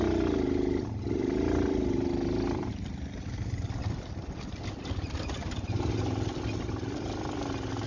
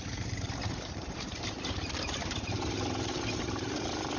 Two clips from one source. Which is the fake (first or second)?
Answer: second